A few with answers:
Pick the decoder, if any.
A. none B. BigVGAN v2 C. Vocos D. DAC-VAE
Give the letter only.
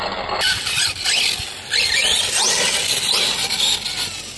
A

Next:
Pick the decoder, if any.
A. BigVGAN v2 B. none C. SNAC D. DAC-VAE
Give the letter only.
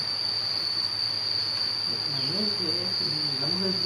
B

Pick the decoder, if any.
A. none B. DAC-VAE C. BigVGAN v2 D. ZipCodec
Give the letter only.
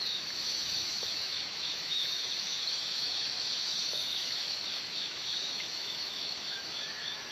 B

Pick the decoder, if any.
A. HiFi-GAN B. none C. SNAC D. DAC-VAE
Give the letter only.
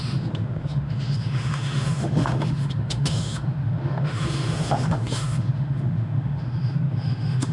D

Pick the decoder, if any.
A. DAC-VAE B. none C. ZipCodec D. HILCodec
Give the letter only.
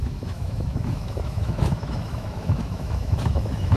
A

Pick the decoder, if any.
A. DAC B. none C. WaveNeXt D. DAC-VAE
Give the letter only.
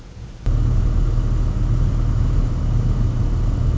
B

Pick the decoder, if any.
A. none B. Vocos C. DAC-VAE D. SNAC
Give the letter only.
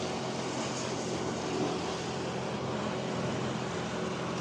A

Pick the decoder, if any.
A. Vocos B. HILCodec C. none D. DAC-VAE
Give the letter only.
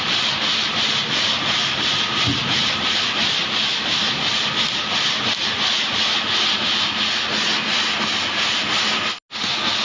C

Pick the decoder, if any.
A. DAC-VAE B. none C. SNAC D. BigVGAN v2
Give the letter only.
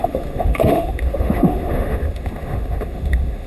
A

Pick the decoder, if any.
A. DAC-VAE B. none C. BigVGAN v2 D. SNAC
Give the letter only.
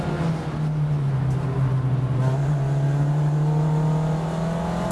B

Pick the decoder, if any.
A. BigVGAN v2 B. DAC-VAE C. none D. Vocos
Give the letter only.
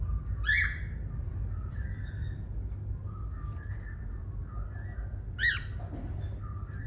C